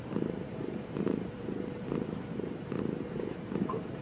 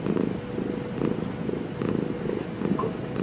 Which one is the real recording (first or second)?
second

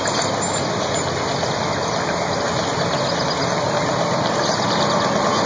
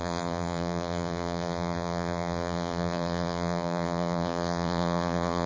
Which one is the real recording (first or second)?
first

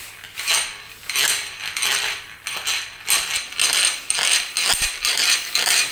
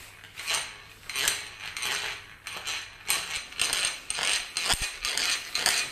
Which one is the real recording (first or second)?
second